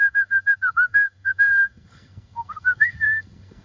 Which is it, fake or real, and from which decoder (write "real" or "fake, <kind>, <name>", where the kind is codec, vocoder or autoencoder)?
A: fake, codec, SNAC